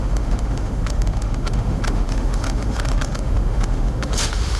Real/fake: fake